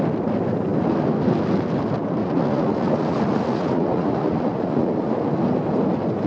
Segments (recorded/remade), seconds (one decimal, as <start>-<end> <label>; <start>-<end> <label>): 0.0-2.2 recorded; 2.2-5.1 remade; 5.1-6.3 recorded